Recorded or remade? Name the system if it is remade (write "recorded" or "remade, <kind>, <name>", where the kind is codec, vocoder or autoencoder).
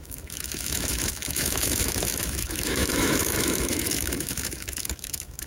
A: remade, autoencoder, DAC-VAE